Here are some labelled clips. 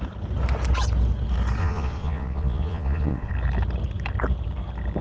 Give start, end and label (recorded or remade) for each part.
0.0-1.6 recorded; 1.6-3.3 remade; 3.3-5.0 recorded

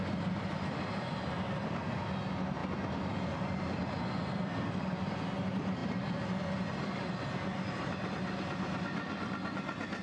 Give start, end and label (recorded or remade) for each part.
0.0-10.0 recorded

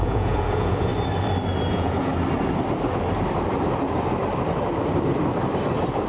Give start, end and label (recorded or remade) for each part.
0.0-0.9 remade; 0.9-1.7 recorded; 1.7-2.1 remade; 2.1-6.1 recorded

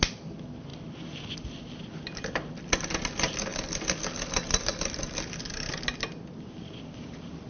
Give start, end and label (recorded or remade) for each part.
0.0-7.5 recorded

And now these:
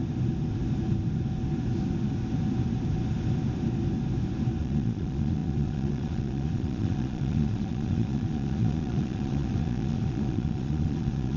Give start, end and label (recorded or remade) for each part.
0.0-4.6 recorded; 4.6-11.4 remade

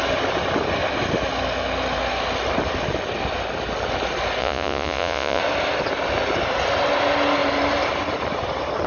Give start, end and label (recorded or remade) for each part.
0.0-4.4 recorded; 4.4-5.4 remade; 5.4-8.9 recorded

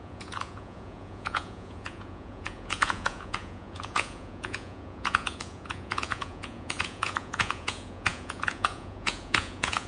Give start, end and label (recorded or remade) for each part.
0.0-9.9 remade